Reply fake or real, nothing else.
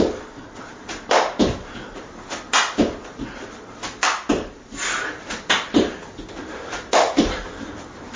real